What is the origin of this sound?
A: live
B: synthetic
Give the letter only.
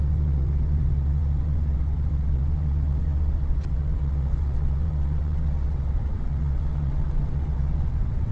B